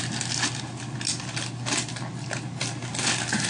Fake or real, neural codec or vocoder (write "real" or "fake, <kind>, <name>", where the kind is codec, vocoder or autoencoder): real